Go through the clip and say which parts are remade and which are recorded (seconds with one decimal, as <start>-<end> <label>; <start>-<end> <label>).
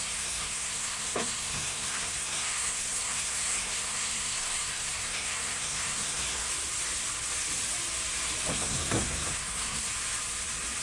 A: 0.0-6.5 remade; 6.5-8.5 recorded; 8.5-9.9 remade; 9.9-10.8 recorded